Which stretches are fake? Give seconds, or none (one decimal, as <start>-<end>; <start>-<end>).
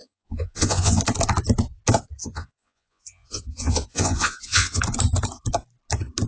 0.0-1.0; 2.2-4.8